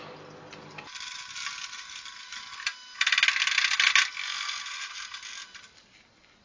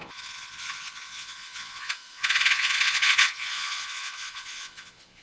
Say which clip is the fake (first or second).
second